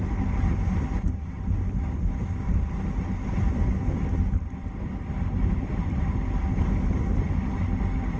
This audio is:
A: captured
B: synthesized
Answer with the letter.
A